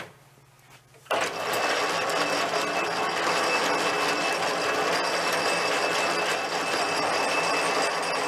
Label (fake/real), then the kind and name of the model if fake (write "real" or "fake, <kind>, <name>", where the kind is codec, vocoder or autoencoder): real